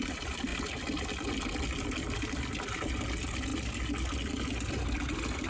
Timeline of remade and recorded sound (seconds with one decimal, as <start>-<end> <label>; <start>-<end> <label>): 0.0-5.5 recorded